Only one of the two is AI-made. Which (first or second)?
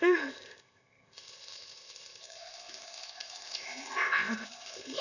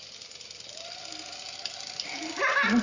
first